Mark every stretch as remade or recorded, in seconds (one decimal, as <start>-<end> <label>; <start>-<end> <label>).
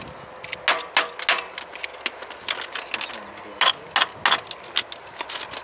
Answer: 0.0-5.6 recorded